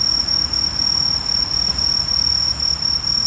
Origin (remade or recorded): recorded